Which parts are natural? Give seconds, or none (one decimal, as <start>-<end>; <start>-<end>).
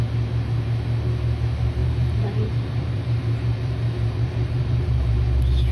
0.0-1.8; 5.2-5.7